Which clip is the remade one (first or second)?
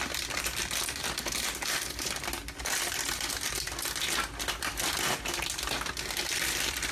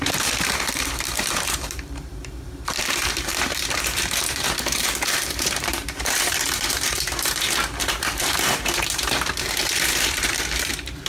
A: second